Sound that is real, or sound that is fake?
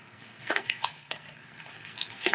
fake